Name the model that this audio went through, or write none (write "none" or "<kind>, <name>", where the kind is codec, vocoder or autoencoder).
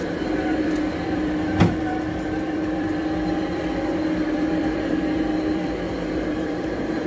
vocoder, BigVGAN v2